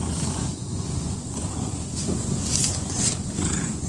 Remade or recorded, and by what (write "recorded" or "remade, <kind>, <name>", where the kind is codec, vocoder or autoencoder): remade, vocoder, Vocos